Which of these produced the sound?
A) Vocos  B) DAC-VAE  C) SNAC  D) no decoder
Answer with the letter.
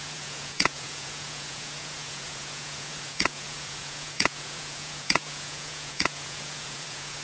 A